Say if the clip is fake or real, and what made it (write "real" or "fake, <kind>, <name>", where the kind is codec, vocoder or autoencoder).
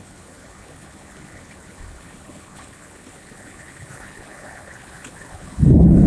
fake, codec, HILCodec